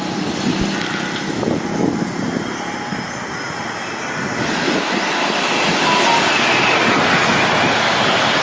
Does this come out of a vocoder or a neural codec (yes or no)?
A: no